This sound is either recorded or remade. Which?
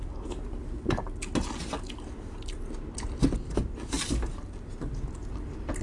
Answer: recorded